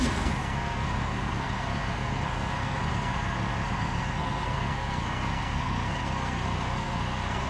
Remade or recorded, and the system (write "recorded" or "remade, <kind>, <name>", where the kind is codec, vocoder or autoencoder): remade, codec, SNAC